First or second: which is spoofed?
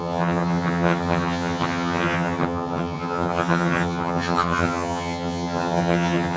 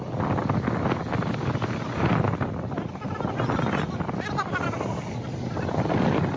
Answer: first